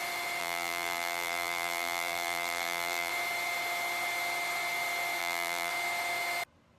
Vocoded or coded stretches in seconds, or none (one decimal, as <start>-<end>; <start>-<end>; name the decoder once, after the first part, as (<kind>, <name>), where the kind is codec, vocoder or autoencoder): 0.4-3.1 (vocoder, BigVGAN v2); 5.2-5.7